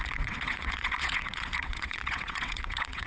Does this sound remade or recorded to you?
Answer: remade